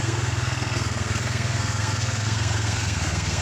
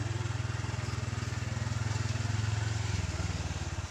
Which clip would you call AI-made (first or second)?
first